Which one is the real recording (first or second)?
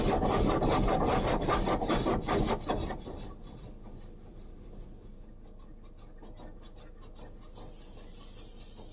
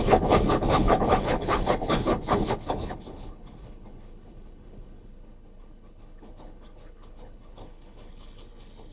first